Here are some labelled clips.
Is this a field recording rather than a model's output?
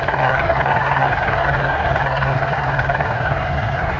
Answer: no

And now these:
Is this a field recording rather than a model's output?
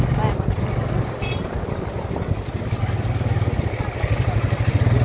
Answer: yes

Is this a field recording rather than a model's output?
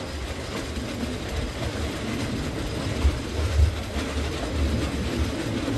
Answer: yes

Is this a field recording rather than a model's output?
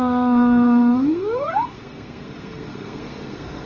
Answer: no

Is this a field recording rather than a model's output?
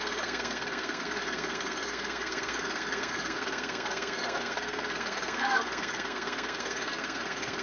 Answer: no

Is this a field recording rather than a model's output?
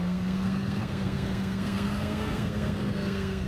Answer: no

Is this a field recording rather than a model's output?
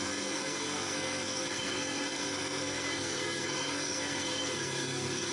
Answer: no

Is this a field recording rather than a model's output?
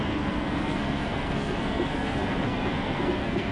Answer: no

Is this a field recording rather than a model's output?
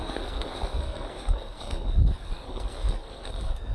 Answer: no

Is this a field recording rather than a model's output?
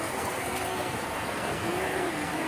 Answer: no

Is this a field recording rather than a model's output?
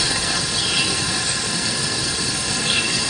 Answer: no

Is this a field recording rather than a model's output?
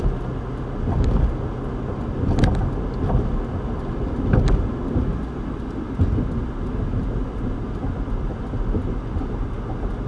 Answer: yes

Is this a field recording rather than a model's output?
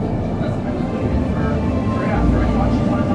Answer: yes